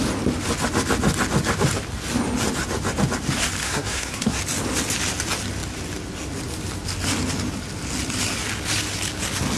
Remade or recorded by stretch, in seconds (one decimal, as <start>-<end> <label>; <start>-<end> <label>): 0.0-3.6 recorded; 3.6-4.4 remade; 4.4-9.6 recorded